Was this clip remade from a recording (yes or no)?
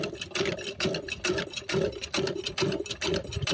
no